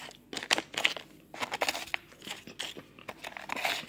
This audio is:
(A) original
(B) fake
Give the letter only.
A